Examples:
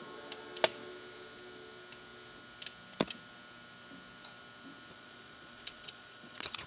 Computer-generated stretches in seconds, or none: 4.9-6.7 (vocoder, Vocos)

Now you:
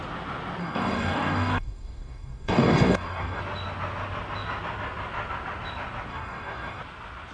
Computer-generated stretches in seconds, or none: 0.6-3.4 (codec, DAC); 6.1-6.8

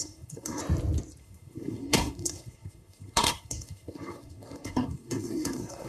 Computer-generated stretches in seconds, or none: 0.0-0.6 (codec, SNAC); 1.2-5.9